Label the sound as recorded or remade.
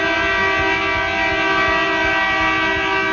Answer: recorded